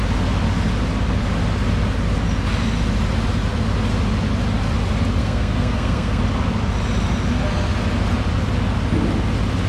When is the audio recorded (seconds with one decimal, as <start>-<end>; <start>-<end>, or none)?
0.0-5.2; 6.2-9.7